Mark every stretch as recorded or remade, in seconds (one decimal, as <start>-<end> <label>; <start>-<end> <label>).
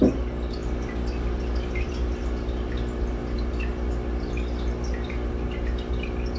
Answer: 0.0-6.4 recorded